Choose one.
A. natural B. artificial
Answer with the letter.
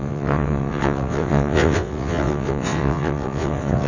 B